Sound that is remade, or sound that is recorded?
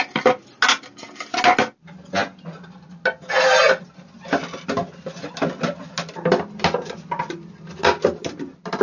recorded